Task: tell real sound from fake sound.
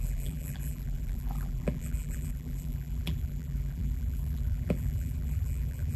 fake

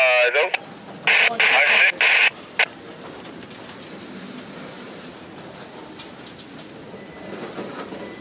real